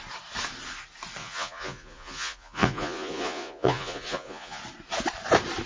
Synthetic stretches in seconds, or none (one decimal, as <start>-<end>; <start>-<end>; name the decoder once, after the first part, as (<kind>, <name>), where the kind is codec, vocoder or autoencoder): 1.2-4.6 (vocoder, Vocos)